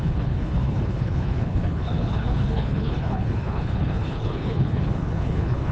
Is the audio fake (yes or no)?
yes